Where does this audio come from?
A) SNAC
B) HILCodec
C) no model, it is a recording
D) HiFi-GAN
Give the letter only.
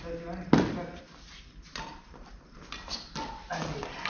C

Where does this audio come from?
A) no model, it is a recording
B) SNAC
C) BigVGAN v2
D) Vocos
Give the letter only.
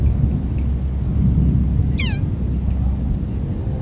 A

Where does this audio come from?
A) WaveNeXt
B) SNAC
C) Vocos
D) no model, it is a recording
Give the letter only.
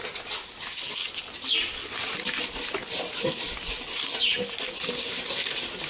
D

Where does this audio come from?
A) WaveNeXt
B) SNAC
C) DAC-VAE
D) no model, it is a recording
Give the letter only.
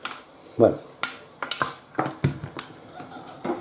D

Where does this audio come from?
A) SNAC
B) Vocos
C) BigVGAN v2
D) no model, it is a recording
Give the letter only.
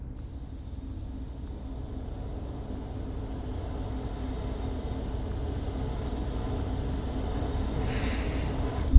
D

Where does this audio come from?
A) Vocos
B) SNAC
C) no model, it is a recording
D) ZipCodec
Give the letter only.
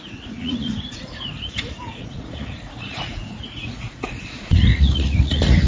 A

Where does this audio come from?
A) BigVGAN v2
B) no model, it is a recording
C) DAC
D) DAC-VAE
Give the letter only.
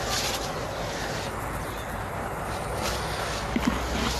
B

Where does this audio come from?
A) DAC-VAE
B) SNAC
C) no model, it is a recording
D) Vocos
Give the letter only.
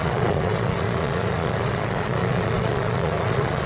D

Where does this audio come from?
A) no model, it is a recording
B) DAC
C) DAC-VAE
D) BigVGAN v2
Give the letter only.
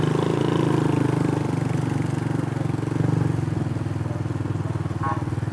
A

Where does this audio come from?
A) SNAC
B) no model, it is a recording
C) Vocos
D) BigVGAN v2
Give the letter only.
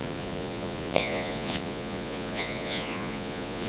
C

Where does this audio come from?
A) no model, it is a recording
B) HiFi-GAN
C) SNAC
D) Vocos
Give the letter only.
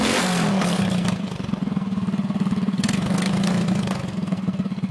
C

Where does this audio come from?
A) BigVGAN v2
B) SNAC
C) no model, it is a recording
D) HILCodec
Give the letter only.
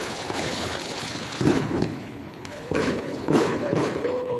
D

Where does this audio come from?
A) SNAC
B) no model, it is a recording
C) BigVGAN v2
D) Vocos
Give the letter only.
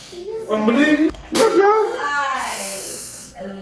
A